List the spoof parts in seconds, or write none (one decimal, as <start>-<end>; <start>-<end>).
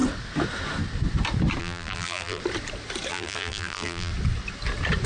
1.6-2.4; 3.1-4.1